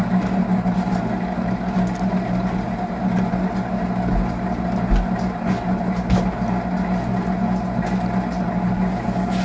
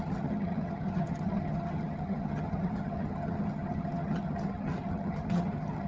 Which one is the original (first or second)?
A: first